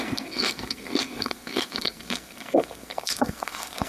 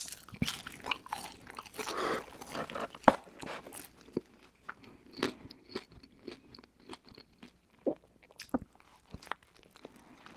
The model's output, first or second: first